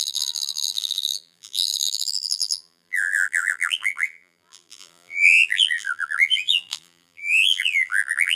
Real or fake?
fake